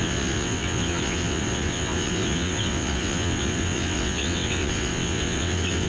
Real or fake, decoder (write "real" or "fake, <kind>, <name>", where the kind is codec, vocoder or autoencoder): fake, vocoder, WaveNeXt